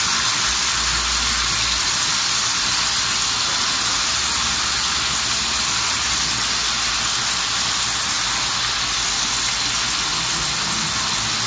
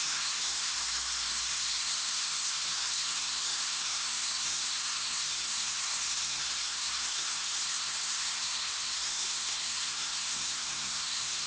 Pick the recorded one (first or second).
first